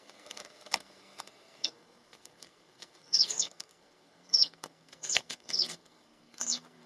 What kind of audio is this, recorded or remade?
remade